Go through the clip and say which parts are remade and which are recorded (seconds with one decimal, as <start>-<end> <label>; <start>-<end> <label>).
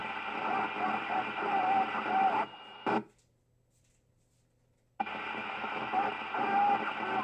0.0-5.4 recorded; 5.4-6.1 remade; 6.1-7.2 recorded